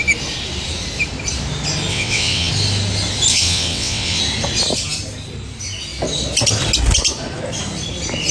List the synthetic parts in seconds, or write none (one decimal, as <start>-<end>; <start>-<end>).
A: 1.9-2.5; 3.3-4.2